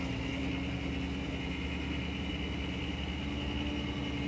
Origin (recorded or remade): recorded